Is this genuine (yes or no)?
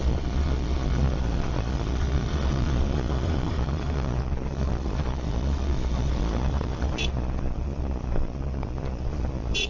no